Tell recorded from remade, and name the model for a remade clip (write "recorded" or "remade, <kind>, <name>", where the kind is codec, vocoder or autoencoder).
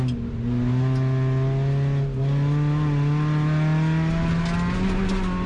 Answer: recorded